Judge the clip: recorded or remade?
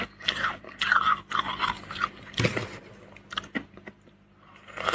recorded